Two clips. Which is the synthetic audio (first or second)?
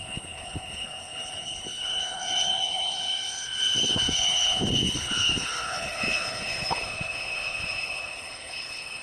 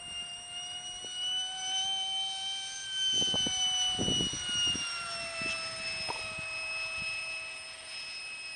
first